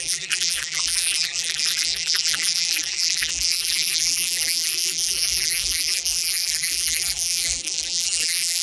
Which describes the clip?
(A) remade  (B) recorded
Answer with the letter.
A